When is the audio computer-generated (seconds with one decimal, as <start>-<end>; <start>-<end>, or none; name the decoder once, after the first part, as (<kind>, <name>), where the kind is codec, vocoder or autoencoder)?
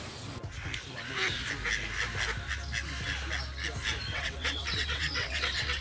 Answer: 4.1-5.8 (vocoder, WaveNeXt)